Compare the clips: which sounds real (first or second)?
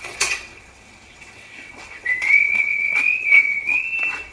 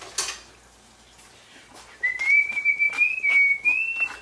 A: second